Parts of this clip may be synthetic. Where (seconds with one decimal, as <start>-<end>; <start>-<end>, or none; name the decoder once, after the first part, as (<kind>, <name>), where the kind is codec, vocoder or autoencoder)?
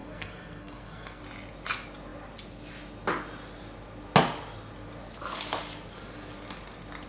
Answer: 0.0-1.2 (codec, SNAC)